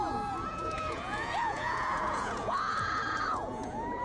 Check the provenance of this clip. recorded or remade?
remade